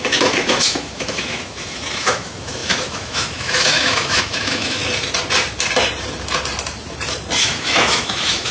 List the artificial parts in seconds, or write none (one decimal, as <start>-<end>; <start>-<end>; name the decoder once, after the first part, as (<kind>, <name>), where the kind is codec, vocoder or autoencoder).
0.0-4.8 (autoencoder, DAC-VAE); 7.4-8.5